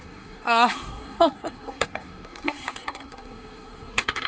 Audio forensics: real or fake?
fake